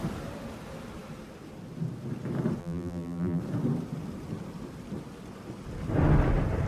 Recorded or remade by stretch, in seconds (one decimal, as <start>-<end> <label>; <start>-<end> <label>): 0.0-2.6 recorded; 2.6-3.4 remade; 3.4-6.7 recorded